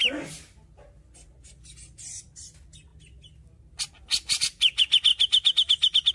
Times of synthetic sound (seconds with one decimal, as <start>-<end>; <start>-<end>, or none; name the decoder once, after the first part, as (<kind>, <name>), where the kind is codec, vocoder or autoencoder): none